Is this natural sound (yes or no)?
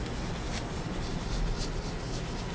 yes